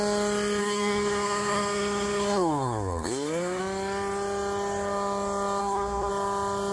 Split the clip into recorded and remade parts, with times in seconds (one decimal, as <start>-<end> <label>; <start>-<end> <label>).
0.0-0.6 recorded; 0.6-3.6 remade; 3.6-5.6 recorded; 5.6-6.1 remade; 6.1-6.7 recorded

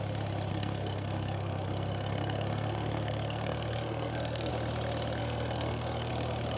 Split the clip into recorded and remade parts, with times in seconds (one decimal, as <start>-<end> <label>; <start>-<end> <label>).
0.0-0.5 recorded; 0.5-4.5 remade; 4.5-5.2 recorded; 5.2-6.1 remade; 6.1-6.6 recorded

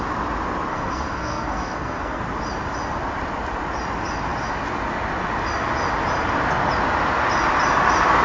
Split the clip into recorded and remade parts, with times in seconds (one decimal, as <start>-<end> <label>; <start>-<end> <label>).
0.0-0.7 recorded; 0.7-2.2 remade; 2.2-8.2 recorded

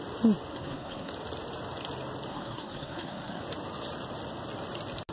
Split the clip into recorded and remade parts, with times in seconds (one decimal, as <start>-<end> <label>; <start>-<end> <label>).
0.0-0.5 recorded; 0.5-1.1 remade; 1.1-2.3 recorded; 2.3-3.4 remade; 3.4-5.1 recorded

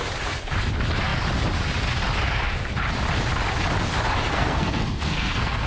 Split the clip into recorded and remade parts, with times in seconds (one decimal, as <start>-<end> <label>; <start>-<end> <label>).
0.0-4.3 recorded; 4.3-5.7 remade

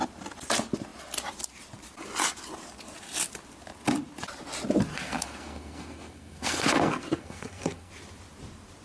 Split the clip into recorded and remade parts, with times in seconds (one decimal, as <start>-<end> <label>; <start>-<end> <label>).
0.0-4.9 recorded; 4.9-7.9 remade; 7.9-8.8 recorded

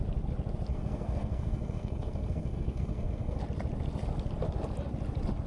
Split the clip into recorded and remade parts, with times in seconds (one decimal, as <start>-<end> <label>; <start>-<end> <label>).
0.0-0.7 recorded; 0.7-3.4 remade; 3.4-5.5 recorded